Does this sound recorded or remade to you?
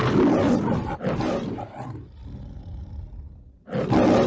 recorded